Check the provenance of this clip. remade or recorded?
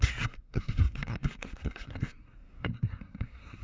remade